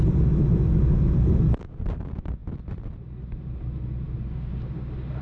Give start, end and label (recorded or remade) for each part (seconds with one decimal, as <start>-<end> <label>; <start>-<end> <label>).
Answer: 0.0-5.2 recorded